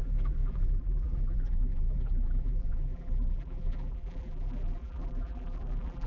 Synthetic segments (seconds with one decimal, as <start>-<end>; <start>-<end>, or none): 0.0-6.1